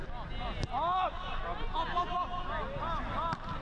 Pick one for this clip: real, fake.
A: real